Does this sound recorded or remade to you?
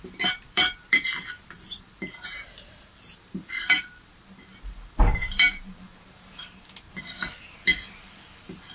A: remade